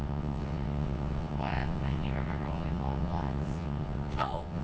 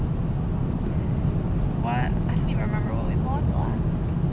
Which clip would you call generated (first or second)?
first